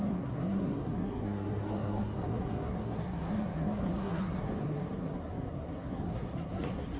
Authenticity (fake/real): fake